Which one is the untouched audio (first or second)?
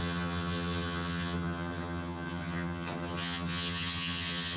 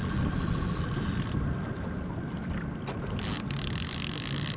second